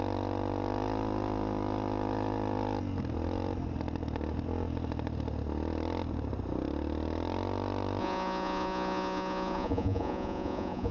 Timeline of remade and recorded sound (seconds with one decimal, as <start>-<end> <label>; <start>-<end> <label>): 0.0-8.0 recorded; 8.0-10.9 remade